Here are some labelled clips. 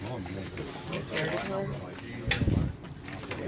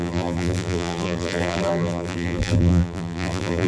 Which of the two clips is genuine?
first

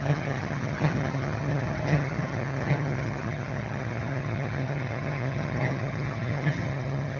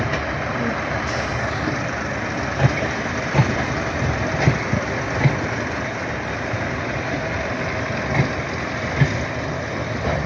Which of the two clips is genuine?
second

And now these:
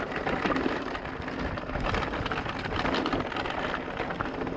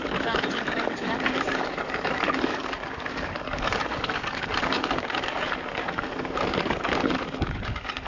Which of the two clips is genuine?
first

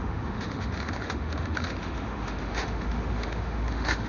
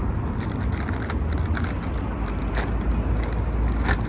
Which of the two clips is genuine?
second